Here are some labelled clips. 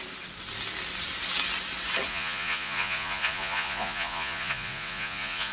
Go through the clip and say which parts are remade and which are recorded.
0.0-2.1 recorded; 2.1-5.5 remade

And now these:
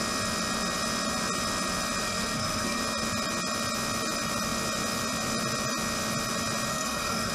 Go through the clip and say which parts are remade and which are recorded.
0.0-2.0 recorded; 2.0-2.8 remade; 2.8-6.7 recorded; 6.7-7.3 remade